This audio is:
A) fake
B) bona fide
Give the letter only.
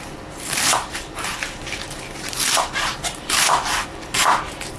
A